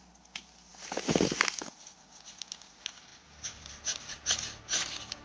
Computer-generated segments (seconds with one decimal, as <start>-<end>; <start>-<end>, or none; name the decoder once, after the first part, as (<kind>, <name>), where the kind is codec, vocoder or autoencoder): none